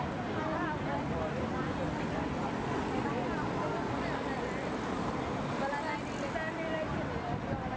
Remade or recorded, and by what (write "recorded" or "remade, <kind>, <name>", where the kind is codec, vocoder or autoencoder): recorded